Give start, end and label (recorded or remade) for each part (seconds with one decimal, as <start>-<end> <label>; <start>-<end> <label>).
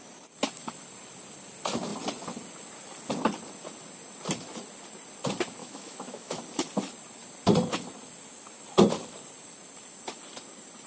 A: 0.0-5.6 recorded; 5.6-6.4 remade; 6.4-10.9 recorded